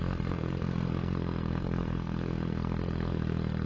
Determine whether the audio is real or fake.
fake